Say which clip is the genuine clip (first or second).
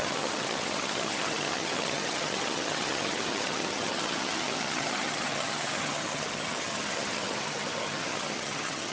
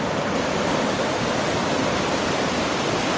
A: second